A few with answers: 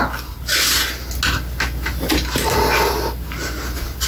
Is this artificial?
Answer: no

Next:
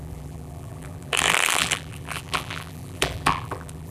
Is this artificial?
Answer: yes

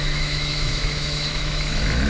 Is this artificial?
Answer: yes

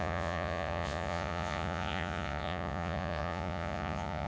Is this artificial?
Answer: yes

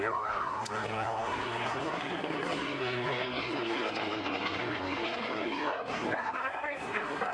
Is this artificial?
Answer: yes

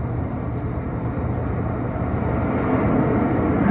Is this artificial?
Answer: no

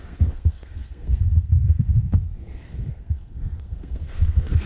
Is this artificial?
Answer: yes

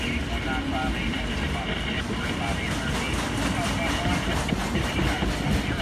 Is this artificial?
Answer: no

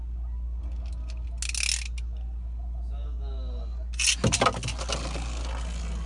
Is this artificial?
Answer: no